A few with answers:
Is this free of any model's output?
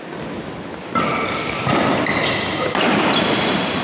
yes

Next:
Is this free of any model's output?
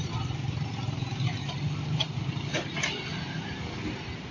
yes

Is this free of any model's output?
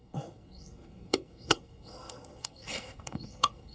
no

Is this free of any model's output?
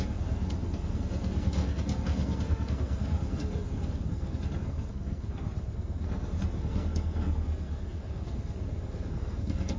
no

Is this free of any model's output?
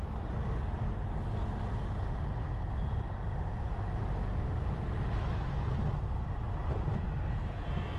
yes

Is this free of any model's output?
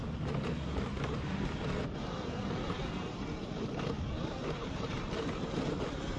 yes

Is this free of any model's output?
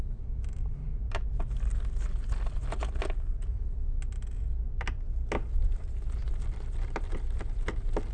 yes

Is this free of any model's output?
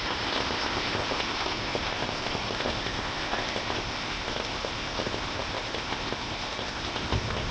no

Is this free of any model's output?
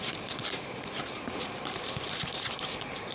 no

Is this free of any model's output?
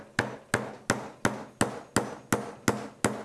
yes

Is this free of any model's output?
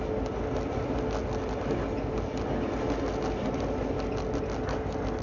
yes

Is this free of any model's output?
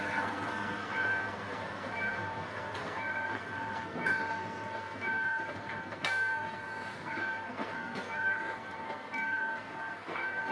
no